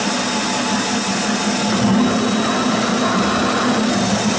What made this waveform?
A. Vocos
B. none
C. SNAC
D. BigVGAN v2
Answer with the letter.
B